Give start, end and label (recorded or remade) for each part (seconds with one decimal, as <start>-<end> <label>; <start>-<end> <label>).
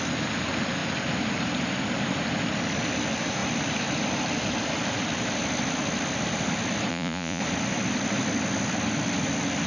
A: 0.0-6.9 recorded; 6.9-7.4 remade; 7.4-9.7 recorded